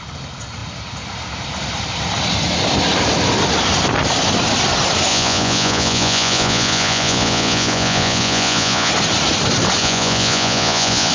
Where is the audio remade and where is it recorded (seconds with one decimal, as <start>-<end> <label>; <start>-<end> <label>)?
0.0-5.1 recorded; 5.1-8.9 remade; 8.9-9.8 recorded; 9.8-11.1 remade